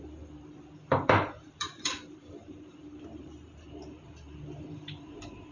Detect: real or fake fake